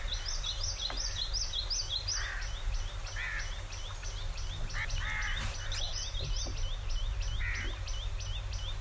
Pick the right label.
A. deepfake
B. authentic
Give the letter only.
B